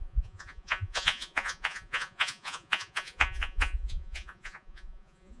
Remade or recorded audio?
remade